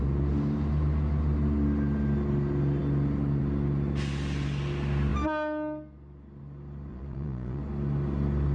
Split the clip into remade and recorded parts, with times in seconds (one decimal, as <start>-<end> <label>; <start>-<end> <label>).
0.0-6.9 recorded; 6.9-7.6 remade; 7.6-8.5 recorded